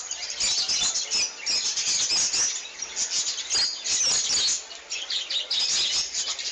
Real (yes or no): yes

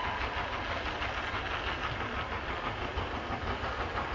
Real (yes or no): yes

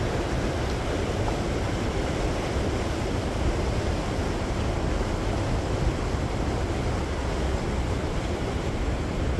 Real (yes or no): yes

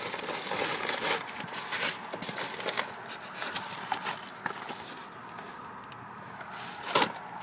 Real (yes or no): yes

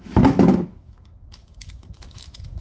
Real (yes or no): no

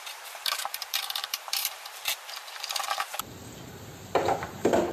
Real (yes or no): no